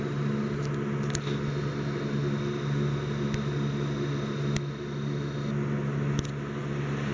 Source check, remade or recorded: recorded